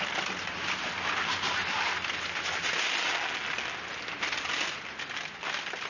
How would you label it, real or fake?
real